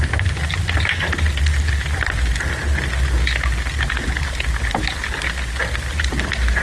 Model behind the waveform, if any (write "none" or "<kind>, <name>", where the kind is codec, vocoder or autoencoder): none